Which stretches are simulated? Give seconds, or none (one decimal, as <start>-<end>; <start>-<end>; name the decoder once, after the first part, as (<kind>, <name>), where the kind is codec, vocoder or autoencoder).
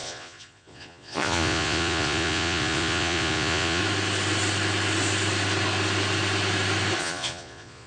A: 0.0-3.8 (vocoder, Vocos); 7.0-7.9